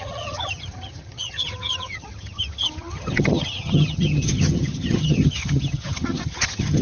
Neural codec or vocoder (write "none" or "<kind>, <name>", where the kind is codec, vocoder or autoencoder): vocoder, HiFi-GAN